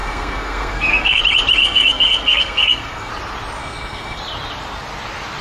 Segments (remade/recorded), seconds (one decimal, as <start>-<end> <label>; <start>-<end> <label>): 0.0-1.2 remade; 1.2-1.6 recorded; 1.6-3.1 remade; 3.1-3.6 recorded; 3.6-4.2 remade; 4.2-5.4 recorded